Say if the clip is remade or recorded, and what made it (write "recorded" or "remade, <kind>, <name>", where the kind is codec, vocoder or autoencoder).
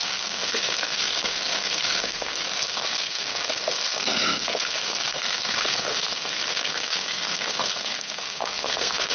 remade, codec, SNAC